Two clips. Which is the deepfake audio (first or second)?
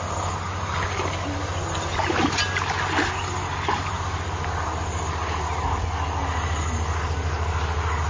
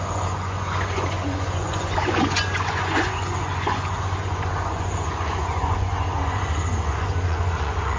second